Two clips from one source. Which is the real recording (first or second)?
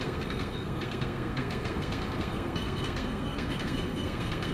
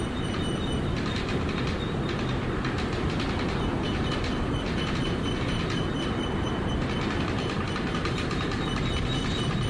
second